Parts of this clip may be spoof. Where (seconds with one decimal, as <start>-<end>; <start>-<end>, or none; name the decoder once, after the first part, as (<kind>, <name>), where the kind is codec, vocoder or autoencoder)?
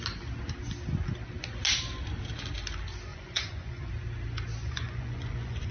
3.1-3.9 (vocoder, Vocos); 4.6-5.7